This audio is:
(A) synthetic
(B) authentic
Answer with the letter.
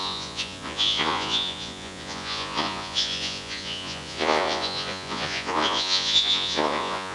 A